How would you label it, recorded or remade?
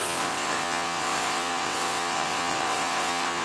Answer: remade